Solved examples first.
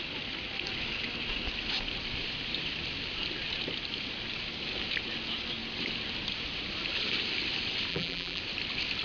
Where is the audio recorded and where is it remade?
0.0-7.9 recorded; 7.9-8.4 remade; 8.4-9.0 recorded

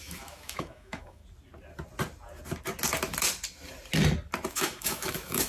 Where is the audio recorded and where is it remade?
0.0-1.2 remade; 1.2-4.5 recorded; 4.5-5.5 remade

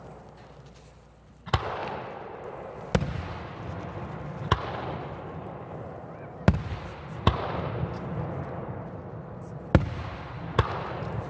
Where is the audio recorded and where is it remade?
0.0-11.3 recorded

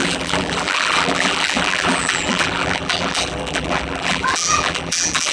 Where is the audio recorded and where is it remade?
0.0-5.3 remade

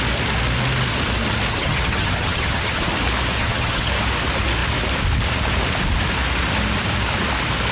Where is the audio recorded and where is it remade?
0.0-1.5 recorded; 1.5-2.9 remade; 2.9-3.4 recorded; 3.4-3.9 remade; 3.9-7.7 recorded

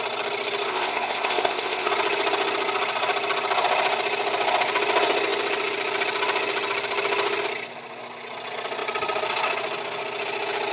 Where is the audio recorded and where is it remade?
0.0-0.7 recorded; 0.7-1.9 remade; 1.9-10.7 recorded

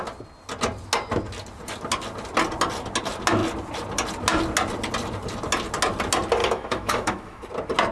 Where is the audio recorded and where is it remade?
0.0-6.4 recorded; 6.4-7.4 remade; 7.4-7.9 recorded